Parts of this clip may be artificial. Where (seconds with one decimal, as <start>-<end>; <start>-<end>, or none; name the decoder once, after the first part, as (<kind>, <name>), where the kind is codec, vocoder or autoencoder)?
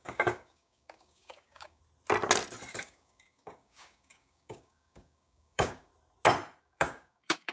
0.0-1.8 (codec, DAC); 2.7-5.9; 6.6-7.5